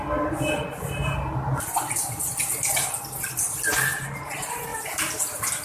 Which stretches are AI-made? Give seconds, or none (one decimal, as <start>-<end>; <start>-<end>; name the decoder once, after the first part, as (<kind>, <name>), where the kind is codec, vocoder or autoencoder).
none